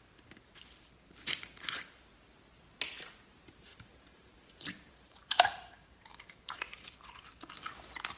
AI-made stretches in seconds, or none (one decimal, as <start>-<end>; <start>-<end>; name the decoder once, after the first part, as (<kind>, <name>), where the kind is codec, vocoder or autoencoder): 3.7-7.2 (vocoder, BigVGAN v2)